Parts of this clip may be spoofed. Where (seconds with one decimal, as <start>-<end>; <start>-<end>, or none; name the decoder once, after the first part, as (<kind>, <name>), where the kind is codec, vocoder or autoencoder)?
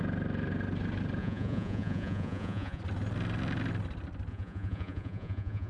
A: 1.2-2.8 (vocoder, Vocos); 4.3-5.7